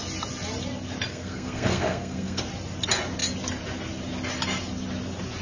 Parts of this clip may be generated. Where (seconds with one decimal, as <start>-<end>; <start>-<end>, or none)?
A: 1.1-2.4